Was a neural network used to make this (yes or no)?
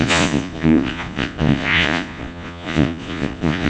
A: yes